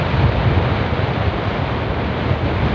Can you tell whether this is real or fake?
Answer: real